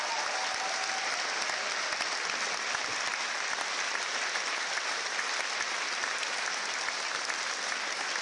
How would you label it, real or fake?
real